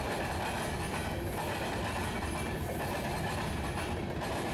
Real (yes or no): yes